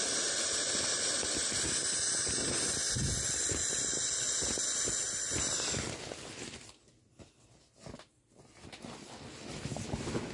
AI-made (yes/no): no